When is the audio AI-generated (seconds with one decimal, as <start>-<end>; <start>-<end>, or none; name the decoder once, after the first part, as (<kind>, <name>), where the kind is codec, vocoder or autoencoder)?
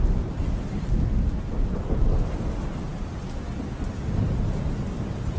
none